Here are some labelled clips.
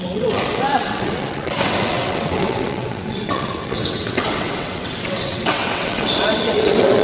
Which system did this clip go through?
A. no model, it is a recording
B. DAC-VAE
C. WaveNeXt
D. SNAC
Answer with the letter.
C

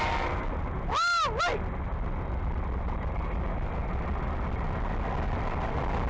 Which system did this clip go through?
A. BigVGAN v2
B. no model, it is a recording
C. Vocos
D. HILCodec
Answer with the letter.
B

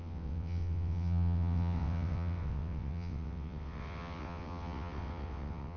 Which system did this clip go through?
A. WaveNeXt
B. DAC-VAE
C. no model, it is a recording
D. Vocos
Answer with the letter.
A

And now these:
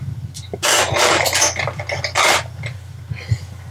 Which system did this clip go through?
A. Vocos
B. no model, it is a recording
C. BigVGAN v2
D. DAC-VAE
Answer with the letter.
B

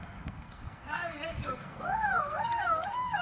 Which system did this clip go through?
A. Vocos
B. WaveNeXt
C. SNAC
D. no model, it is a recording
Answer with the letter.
C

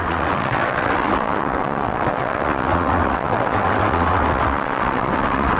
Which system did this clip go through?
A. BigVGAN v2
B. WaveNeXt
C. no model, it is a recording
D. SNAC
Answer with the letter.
B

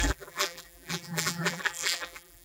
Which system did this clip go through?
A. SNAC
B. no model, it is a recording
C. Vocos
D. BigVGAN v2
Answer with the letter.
D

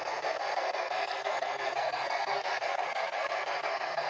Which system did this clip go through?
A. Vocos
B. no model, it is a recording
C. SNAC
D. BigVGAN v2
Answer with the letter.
C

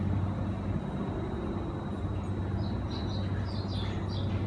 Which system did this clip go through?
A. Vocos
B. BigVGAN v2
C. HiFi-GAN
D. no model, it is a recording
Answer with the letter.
D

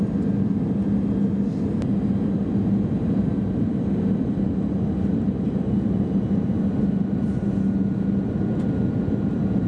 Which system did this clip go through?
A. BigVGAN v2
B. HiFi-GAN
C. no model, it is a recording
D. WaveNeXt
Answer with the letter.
C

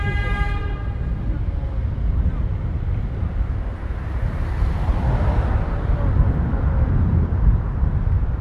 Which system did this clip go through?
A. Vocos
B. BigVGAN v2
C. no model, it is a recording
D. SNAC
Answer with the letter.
C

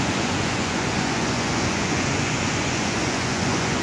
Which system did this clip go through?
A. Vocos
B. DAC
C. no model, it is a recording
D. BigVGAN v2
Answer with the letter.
A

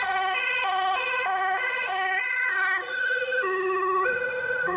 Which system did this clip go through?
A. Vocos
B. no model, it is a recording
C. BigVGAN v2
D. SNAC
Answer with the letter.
A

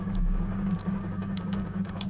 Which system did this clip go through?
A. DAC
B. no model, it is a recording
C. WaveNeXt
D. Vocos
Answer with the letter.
A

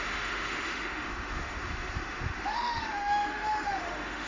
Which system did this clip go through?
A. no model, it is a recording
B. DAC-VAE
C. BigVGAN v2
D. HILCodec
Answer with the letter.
B